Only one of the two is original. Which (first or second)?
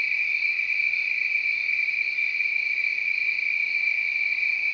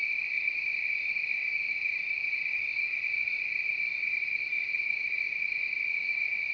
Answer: first